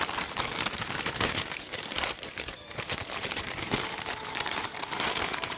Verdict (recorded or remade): remade